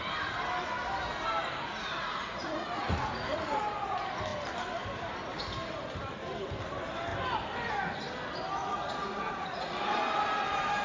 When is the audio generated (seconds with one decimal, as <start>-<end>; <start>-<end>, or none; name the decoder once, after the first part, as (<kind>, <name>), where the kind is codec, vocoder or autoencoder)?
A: 1.8-3.6 (vocoder, Vocos); 8.6-9.8